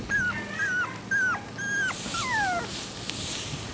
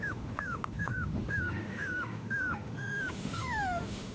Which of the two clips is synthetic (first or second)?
second